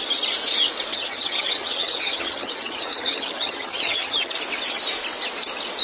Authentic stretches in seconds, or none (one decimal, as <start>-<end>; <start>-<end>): 0.0-0.9; 4.4-5.8